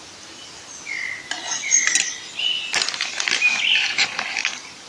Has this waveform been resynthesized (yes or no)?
no